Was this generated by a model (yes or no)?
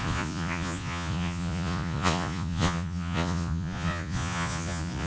yes